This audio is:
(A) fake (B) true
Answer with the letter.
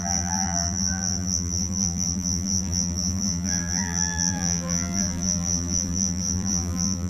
A